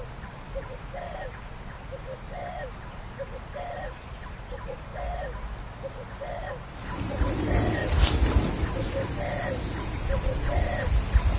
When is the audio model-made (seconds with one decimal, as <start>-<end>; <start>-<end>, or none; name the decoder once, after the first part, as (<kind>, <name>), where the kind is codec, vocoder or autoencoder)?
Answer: 0.0-1.9 (vocoder, BigVGAN v2); 3.5-4.9; 7.1-7.8